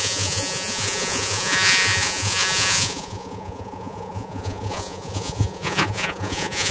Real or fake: fake